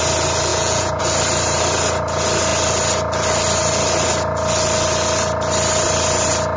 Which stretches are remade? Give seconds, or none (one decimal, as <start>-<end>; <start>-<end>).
0.5-1.0